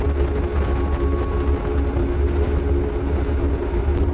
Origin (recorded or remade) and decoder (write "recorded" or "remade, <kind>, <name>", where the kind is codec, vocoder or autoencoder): recorded